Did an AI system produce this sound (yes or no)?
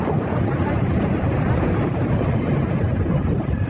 yes